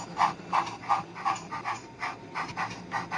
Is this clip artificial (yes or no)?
no